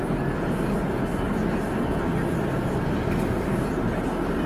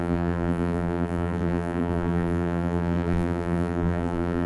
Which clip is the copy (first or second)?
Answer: second